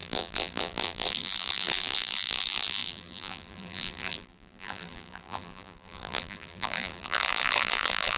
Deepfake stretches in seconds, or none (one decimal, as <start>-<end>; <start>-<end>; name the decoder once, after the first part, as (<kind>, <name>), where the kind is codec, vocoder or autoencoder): 0.0-8.2 (vocoder, BigVGAN v2)